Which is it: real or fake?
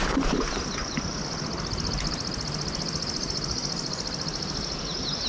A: real